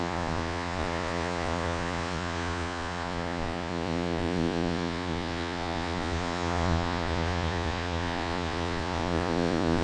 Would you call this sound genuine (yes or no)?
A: no